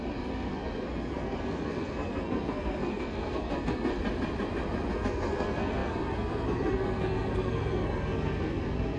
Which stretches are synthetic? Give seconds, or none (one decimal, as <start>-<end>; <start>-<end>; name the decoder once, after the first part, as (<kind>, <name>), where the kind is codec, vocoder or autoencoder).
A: 0.0-3.9 (codec, SNAC); 4.9-9.0